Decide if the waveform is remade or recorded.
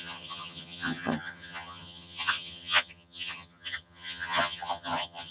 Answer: remade